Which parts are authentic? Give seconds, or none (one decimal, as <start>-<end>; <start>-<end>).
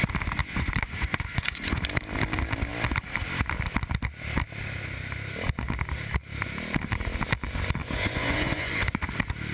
0.0-0.4; 1.8-7.8; 9.1-9.5